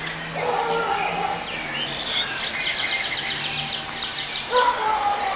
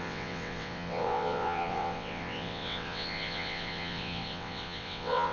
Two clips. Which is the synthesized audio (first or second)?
second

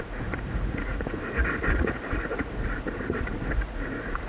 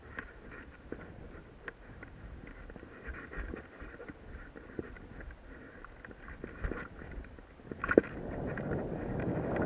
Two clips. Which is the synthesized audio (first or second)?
first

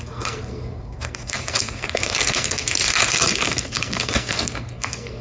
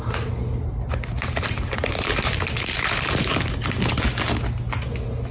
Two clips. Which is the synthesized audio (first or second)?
first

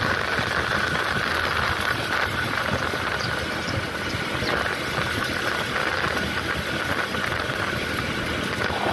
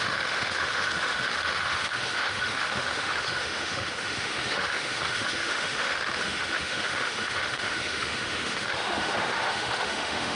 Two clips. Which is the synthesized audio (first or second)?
second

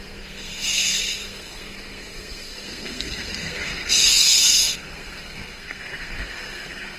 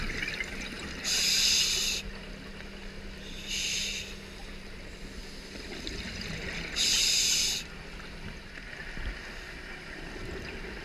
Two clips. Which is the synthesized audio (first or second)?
first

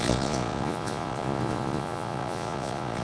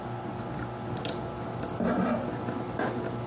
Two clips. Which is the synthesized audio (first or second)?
first